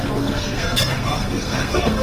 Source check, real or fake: fake